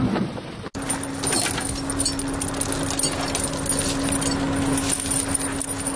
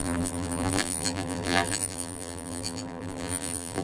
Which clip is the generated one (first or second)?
second